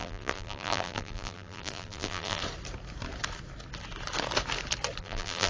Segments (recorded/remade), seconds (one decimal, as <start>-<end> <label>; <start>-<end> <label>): 0.0-2.4 remade; 2.4-5.0 recorded; 5.0-5.5 remade